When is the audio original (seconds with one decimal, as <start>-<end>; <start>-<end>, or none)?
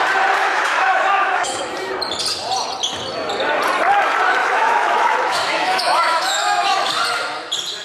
0.0-0.4; 1.6-4.4; 6.9-7.8